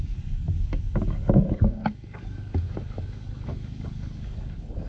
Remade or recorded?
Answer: remade